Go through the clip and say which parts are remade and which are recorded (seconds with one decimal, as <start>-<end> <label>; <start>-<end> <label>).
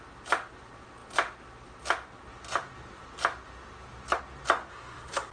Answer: 0.0-4.7 recorded; 4.7-5.3 remade